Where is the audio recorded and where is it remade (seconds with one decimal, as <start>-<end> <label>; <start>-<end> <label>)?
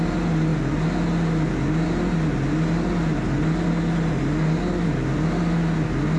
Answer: 0.0-6.2 recorded